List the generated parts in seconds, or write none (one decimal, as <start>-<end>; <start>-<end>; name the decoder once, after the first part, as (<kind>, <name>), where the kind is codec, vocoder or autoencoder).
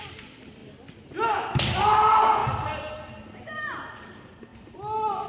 none